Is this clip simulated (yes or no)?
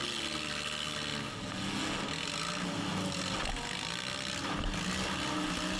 no